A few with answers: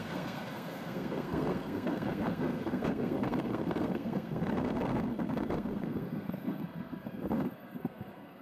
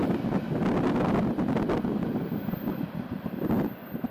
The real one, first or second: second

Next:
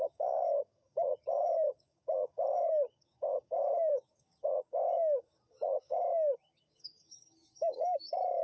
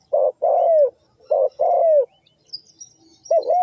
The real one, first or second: second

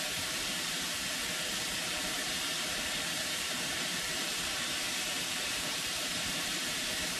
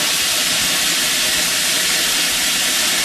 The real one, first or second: second